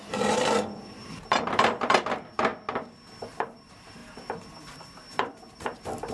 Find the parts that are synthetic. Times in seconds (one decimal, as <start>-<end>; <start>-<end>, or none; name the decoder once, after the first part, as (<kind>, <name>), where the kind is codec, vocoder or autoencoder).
0.0-2.5 (vocoder, BigVGAN v2); 3.2-6.1